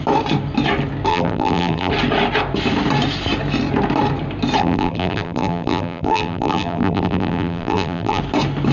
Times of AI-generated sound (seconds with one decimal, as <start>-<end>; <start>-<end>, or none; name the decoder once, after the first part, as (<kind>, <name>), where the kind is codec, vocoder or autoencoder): 1.1-1.9 (vocoder, BigVGAN v2); 4.6-8.2

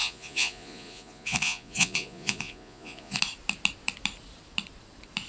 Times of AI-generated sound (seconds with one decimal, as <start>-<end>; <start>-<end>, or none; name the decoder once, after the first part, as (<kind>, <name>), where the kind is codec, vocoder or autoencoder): 0.0-3.2 (vocoder, Vocos)

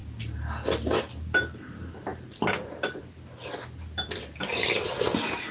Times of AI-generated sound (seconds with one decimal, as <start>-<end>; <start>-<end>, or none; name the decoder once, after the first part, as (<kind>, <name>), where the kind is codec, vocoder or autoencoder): none

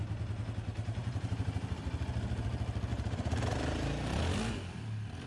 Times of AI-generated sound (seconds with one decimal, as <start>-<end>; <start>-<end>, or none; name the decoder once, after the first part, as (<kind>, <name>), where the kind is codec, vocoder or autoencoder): 1.0-1.8 (vocoder, BigVGAN v2); 2.9-4.2